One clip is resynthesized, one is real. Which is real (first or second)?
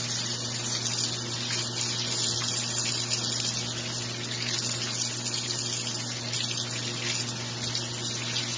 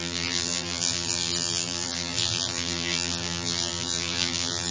first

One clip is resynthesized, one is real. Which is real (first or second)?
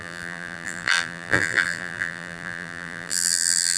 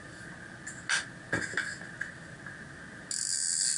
second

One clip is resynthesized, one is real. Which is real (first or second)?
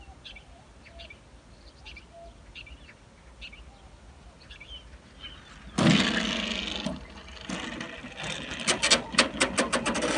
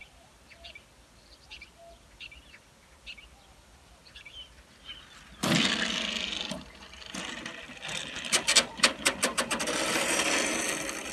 first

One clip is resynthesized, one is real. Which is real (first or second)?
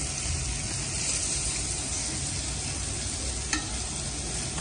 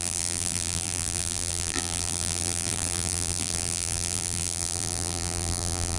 first